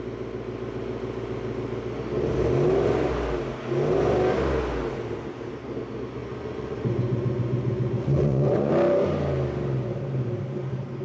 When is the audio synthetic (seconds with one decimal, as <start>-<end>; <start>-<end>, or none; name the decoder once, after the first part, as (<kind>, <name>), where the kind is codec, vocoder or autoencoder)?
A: 6.2-8.7 (vocoder, Vocos)